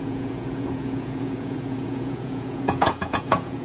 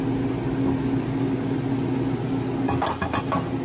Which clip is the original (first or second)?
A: second